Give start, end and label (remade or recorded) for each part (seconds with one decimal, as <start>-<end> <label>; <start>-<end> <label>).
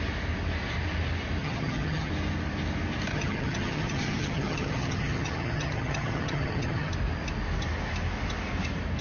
0.0-1.4 recorded; 1.4-2.1 remade; 2.1-3.1 recorded; 3.1-6.9 remade; 6.9-9.0 recorded